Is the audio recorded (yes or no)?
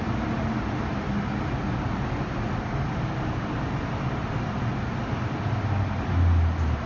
yes